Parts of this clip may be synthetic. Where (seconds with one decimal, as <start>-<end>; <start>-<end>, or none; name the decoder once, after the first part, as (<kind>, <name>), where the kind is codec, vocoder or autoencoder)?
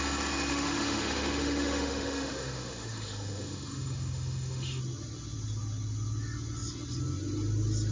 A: 0.5-4.8 (autoencoder, DAC-VAE)